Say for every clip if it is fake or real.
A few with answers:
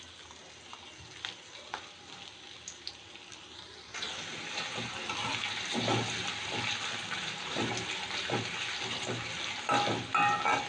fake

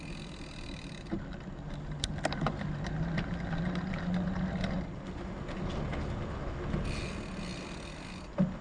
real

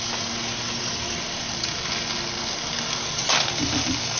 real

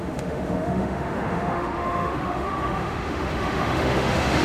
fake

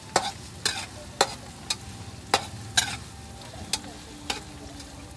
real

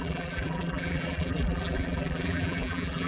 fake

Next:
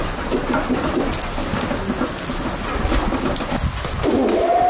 real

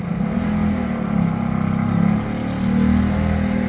real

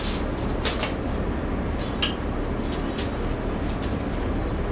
real